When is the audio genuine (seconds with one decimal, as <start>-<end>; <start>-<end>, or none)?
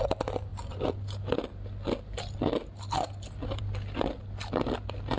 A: 0.0-5.2